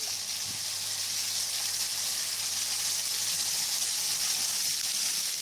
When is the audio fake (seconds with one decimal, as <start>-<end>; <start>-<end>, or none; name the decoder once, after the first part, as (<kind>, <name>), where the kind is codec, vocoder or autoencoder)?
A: none